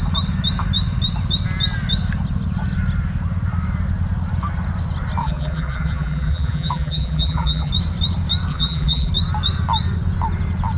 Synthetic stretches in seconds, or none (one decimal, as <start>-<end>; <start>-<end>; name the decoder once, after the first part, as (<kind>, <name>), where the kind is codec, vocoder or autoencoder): 5.2-7.7 (vocoder, BigVGAN v2); 8.5-9.1